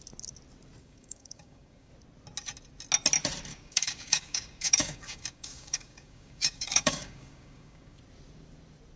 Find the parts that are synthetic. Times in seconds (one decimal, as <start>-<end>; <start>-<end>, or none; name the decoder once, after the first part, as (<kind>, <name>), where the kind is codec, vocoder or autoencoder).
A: 0.8-1.9 (codec, DAC); 3.5-8.0